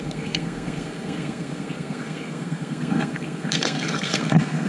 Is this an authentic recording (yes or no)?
no